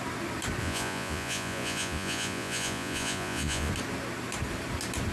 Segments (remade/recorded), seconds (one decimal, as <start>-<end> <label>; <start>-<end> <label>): 0.0-0.6 recorded; 0.6-3.7 remade; 3.7-5.1 recorded